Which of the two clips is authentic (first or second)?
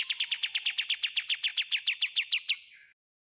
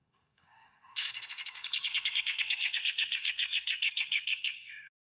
first